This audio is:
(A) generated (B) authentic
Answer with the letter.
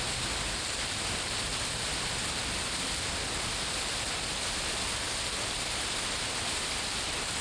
B